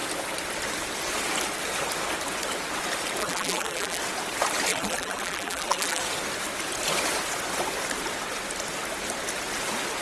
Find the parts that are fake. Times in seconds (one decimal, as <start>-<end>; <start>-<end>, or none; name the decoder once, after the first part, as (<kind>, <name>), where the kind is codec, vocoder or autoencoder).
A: 3.2-4.0 (vocoder, BigVGAN v2); 4.7-6.0